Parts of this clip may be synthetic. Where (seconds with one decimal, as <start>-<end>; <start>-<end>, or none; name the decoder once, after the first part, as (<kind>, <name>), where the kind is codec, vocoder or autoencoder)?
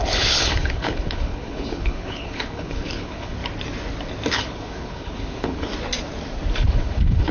0.0-3.4 (codec, HILCodec); 4.3-5.7; 6.5-7.3